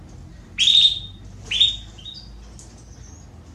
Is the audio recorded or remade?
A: recorded